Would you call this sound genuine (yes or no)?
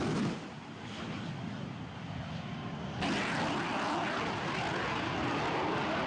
yes